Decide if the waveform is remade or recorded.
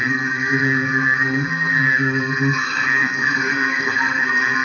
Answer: remade